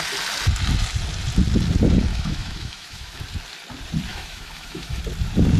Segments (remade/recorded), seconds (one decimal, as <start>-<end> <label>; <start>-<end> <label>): 0.0-2.1 recorded; 2.1-3.2 remade; 3.2-4.1 recorded; 4.1-5.0 remade; 5.0-5.6 recorded